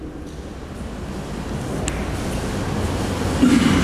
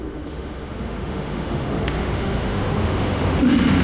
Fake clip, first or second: second